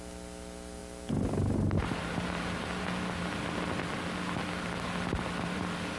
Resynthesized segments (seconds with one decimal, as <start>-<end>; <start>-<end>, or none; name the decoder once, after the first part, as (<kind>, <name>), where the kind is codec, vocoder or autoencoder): none